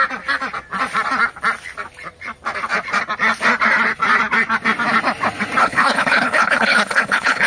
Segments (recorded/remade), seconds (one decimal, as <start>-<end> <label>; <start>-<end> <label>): 0.0-5.6 recorded; 5.6-7.5 remade